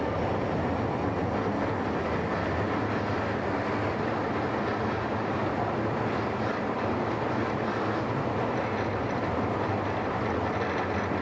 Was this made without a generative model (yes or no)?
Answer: yes